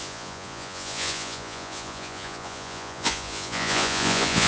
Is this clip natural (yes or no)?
no